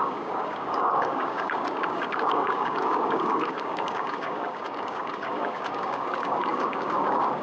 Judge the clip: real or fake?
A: fake